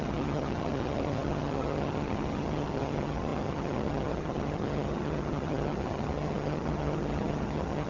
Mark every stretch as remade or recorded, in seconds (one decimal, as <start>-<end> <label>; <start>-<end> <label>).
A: 0.0-7.9 remade